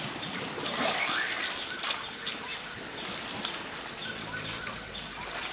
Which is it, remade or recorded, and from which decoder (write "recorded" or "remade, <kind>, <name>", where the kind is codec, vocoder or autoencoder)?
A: recorded